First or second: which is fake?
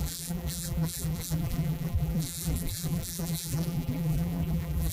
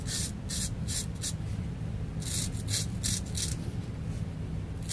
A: first